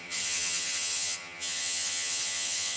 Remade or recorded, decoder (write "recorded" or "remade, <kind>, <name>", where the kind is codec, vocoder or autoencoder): remade, vocoder, HiFi-GAN